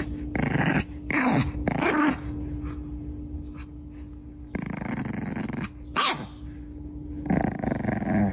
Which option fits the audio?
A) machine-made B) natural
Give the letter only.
B